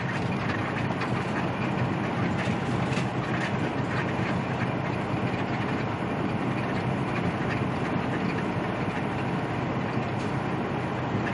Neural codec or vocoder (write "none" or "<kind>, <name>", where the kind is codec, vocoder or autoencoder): none